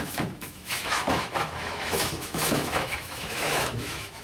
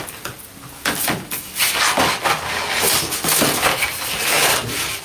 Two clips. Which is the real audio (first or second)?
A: second